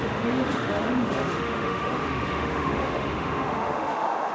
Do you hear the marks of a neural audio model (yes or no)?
yes